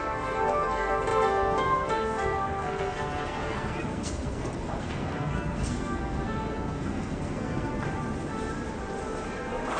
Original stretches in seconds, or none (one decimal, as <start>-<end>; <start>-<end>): 7.7-9.8

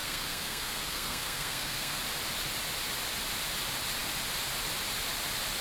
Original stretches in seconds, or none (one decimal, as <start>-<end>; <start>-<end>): 2.0-5.6

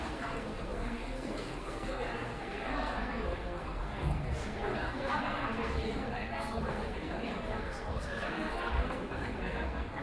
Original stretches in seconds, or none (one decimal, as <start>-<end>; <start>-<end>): none